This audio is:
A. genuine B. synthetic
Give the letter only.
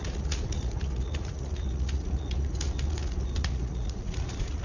B